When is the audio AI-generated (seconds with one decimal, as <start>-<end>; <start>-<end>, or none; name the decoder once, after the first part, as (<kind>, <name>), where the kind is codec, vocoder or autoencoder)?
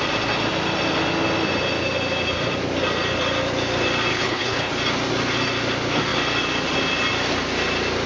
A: 4.1-4.7 (codec, HILCodec)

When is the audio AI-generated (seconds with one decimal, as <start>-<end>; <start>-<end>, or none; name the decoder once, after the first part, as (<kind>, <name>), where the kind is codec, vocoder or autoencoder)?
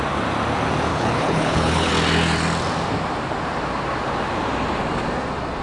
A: 0.9-1.9 (codec, HILCodec)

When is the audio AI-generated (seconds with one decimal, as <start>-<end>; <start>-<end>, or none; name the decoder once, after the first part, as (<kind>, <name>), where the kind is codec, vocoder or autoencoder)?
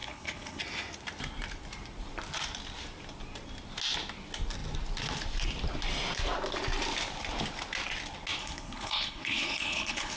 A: 0.0-0.6 (codec, HILCodec); 8.4-10.2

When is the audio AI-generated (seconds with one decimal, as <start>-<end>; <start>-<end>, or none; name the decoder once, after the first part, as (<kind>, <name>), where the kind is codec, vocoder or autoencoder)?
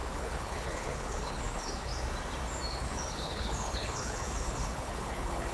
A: 0.0-1.9 (codec, HILCodec); 2.7-5.5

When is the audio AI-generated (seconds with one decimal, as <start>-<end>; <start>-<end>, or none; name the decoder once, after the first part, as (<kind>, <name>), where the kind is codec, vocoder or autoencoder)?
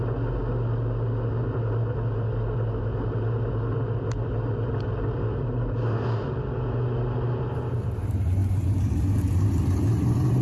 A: none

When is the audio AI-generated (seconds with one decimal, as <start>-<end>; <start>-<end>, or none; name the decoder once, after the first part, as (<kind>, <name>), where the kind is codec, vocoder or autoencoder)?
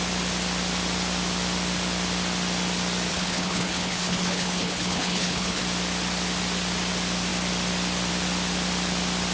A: 3.1-5.6 (codec, HILCodec)